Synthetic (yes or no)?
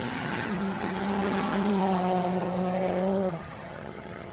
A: yes